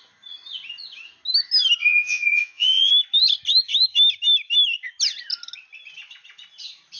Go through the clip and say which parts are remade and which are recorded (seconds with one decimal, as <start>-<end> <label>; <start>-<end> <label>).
0.0-1.8 recorded; 1.8-2.9 remade; 2.9-7.0 recorded

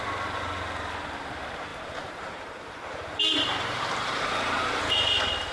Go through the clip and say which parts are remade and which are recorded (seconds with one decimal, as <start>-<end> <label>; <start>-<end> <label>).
0.0-1.7 recorded; 1.7-4.8 remade; 4.8-5.5 recorded